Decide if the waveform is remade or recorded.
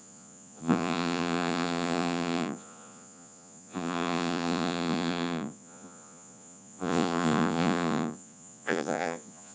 remade